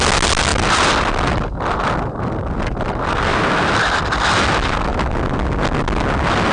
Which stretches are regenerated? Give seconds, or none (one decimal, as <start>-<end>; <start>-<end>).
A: 0.5-4.4